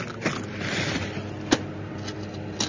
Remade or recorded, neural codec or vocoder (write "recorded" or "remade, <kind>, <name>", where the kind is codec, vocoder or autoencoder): recorded